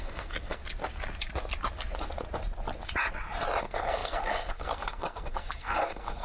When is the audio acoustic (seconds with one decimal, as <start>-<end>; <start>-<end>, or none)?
0.6-3.6